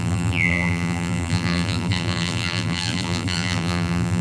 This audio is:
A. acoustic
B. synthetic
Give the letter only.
B